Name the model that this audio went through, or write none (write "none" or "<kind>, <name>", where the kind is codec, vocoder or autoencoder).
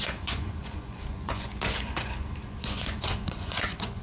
vocoder, Vocos